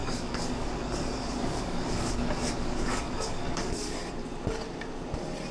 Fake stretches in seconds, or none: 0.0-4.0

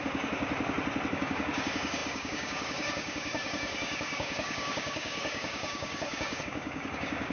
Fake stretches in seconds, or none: 0.0-0.4; 1.1-7.3

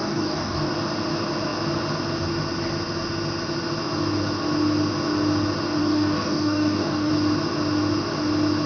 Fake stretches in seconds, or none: 0.0-0.7; 5.8-7.1

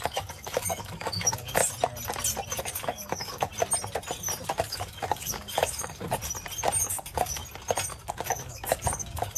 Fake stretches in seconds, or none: 0.0-1.6; 2.6-3.5; 4.6-6.2; 6.8-7.4; 8.1-9.4

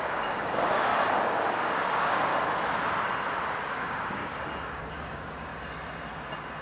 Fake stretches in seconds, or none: 0.0-0.9; 1.5-2.3; 3.7-4.2; 4.8-5.5

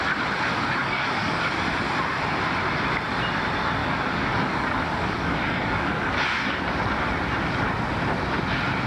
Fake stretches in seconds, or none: 0.8-1.4; 3.8-6.6